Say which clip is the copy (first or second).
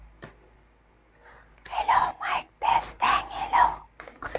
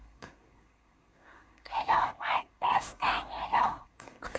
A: second